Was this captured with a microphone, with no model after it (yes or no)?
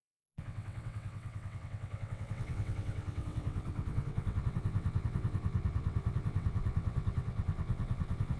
no